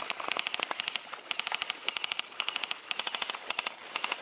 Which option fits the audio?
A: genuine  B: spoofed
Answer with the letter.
A